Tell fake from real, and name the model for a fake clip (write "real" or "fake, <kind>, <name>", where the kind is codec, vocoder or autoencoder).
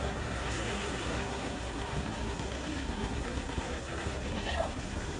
fake, codec, SNAC